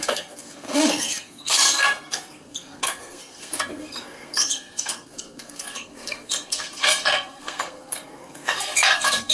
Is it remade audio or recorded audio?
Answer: remade